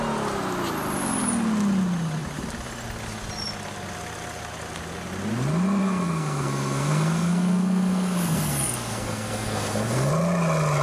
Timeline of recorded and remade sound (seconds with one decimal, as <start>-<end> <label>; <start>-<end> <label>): 0.0-5.8 recorded; 5.8-10.1 remade; 10.1-10.8 recorded